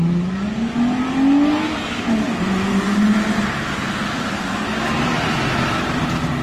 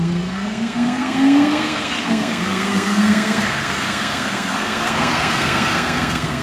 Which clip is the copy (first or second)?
second